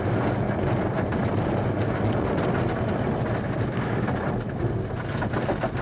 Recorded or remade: recorded